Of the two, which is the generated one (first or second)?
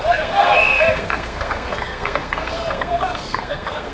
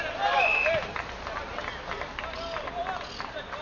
first